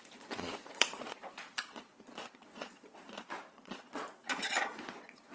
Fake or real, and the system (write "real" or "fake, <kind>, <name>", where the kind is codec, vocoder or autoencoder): fake, vocoder, Vocos